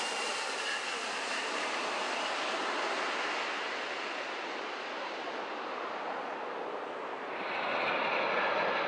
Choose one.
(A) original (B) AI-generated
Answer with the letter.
A